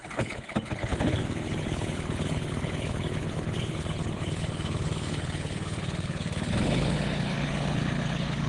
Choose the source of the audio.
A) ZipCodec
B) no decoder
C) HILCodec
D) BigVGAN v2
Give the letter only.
C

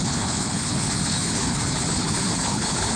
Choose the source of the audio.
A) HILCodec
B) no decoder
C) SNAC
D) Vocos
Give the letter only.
A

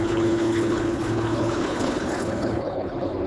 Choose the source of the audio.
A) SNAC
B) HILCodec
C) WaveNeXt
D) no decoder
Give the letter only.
B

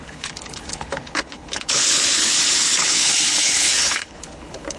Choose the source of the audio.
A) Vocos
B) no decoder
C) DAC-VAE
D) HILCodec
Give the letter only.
D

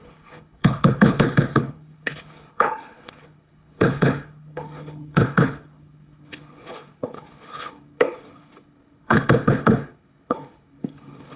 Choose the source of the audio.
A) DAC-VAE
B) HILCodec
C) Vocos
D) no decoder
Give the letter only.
B